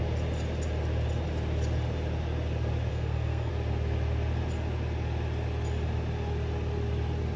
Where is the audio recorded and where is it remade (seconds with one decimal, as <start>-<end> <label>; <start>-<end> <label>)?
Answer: 0.0-2.9 recorded; 2.9-3.5 remade; 3.5-7.4 recorded